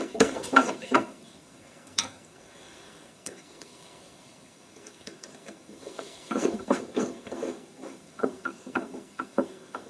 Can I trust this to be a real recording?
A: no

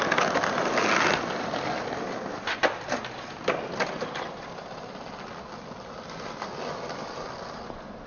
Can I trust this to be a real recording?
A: yes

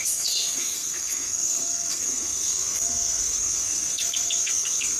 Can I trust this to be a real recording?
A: no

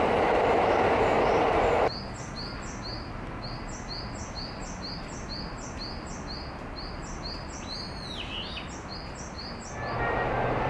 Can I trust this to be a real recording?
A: yes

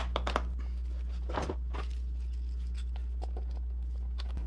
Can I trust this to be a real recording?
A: yes